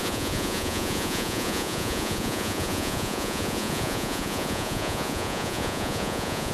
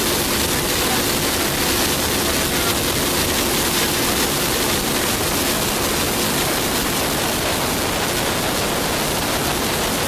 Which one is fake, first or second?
first